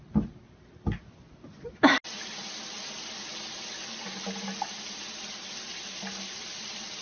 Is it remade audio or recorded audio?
recorded